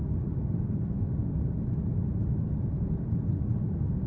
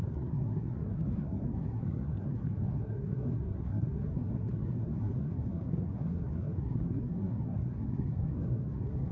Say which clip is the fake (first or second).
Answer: second